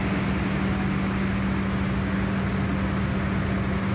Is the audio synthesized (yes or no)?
no